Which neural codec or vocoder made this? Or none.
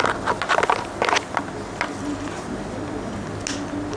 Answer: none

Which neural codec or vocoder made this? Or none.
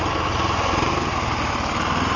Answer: none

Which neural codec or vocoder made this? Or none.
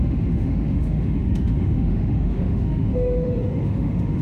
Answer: autoencoder, DAC-VAE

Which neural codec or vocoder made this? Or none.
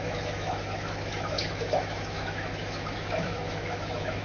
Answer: autoencoder, DAC-VAE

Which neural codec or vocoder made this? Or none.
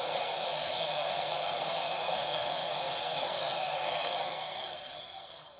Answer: codec, SNAC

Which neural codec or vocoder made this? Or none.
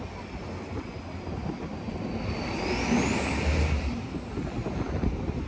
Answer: none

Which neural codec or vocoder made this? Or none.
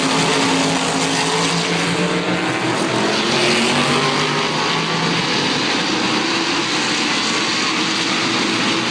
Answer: none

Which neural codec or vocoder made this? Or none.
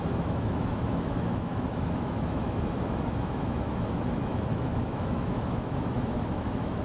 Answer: autoencoder, DAC-VAE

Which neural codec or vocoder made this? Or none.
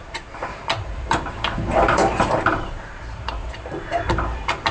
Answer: vocoder, BigVGAN v2